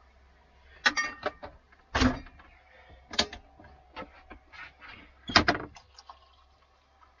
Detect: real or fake real